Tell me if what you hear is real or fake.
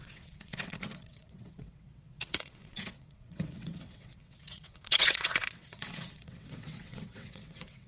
fake